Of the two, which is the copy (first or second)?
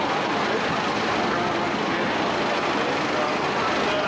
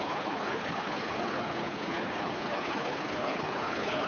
second